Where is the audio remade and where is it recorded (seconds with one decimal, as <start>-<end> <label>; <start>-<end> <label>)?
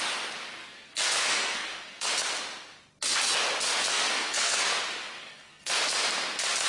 0.0-0.6 recorded; 0.6-2.1 remade; 2.1-3.9 recorded; 3.9-4.8 remade; 4.8-5.2 recorded; 5.2-5.7 remade; 5.7-6.7 recorded